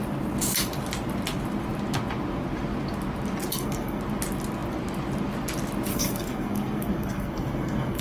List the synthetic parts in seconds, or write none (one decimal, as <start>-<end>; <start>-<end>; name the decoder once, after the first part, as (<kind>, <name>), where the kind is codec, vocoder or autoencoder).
3.5-4.0 (codec, SNAC); 5.9-8.0